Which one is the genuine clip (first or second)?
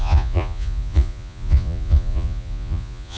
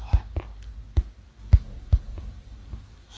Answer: second